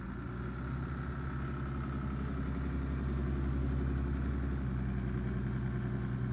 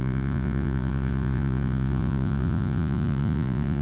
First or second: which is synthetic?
second